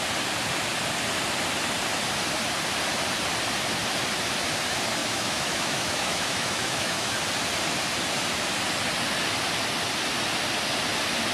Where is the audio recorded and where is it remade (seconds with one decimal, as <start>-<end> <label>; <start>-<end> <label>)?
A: 0.0-5.0 recorded; 5.0-7.1 remade; 7.1-11.3 recorded